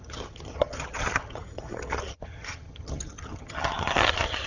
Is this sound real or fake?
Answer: fake